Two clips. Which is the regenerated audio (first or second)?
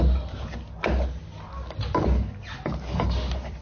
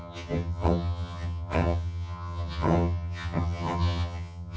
second